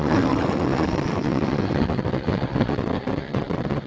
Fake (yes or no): yes